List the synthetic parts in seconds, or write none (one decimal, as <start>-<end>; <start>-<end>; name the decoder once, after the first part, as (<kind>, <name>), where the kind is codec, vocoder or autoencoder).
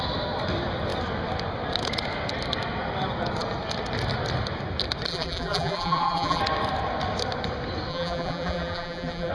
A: 5.1-6.4 (vocoder, BigVGAN v2); 7.9-9.3